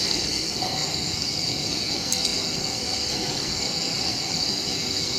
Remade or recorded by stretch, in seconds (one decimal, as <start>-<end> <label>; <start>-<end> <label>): 0.0-5.2 remade